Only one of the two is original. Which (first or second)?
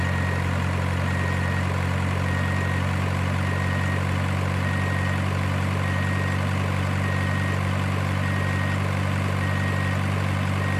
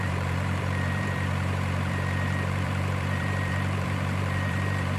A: first